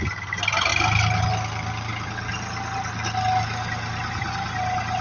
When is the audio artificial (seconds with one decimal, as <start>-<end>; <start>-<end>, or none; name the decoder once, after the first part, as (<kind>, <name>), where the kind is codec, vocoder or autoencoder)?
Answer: none